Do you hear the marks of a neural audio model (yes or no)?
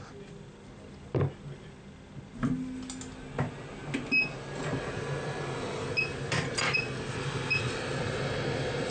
no